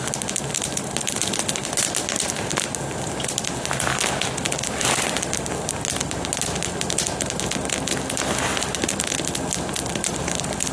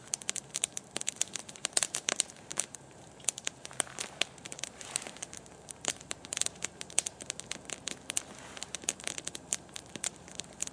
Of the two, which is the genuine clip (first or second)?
first